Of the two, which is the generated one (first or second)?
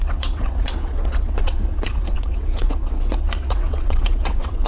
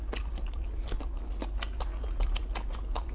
first